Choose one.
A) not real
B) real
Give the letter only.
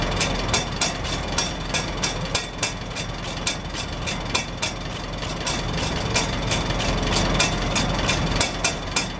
B